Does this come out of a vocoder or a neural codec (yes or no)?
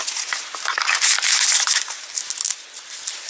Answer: no